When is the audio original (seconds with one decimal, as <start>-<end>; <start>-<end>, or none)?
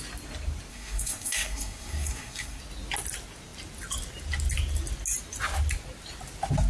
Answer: 0.0-0.7; 2.6-6.7